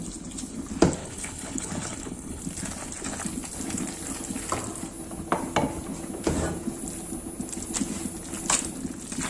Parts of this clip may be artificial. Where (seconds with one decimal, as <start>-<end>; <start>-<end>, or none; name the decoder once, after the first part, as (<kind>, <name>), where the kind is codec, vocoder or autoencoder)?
1.0-2.4 (codec, HILCodec)